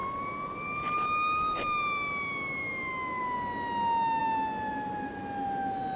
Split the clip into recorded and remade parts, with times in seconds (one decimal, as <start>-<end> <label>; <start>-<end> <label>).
0.0-6.0 recorded